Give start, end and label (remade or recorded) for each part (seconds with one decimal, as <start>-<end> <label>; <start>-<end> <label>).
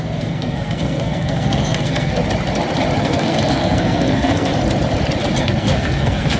0.0-2.2 remade; 2.2-3.0 recorded; 3.0-4.5 remade; 4.5-5.4 recorded; 5.4-6.4 remade